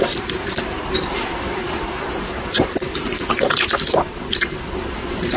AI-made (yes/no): yes